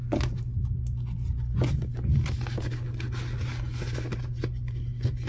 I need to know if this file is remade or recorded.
recorded